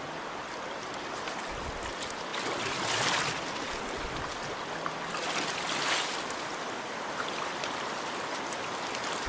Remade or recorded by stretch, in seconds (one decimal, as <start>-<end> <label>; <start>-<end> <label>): 0.0-9.3 recorded